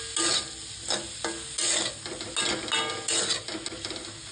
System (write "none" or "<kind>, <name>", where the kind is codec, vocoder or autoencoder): none